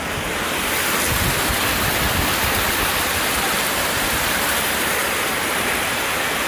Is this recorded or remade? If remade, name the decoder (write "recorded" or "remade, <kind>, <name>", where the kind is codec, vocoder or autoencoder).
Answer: recorded